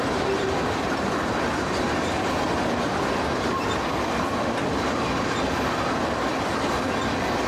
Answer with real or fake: real